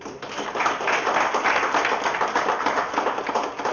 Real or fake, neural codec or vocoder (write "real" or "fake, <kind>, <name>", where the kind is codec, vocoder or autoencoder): real